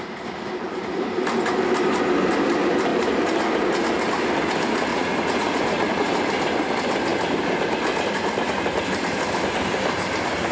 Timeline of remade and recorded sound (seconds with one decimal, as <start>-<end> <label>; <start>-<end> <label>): 0.0-4.9 recorded; 4.9-6.1 remade; 6.1-10.5 recorded